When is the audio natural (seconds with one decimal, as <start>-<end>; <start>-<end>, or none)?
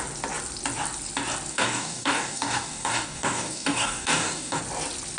0.0-1.5; 4.6-5.2